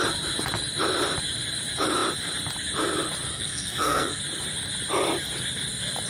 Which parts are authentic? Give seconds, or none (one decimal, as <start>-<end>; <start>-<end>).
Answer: 0.0-3.3; 4.2-6.1